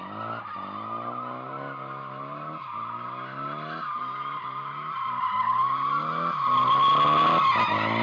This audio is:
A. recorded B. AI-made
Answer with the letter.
A